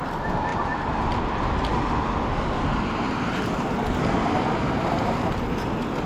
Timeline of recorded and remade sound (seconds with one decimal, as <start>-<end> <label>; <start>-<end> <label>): 0.0-6.1 recorded